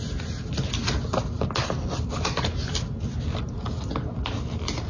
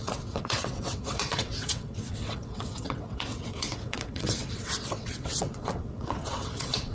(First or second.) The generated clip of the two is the second